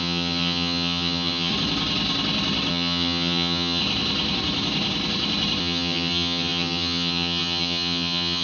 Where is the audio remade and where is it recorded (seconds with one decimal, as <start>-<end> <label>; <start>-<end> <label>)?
0.0-1.5 remade; 1.5-2.7 recorded; 2.7-3.8 remade; 3.8-5.6 recorded; 5.6-8.4 remade